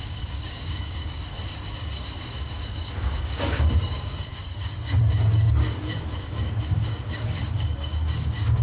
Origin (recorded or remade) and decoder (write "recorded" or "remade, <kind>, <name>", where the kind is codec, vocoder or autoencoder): remade, codec, DAC